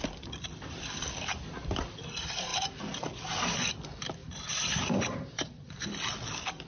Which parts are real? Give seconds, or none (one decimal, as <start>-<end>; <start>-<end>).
0.0-4.2; 5.9-6.7